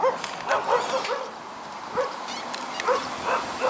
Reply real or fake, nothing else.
real